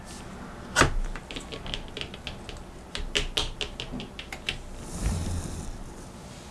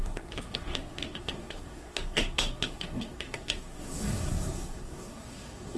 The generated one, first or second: second